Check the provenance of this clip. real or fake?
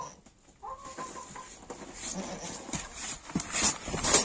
real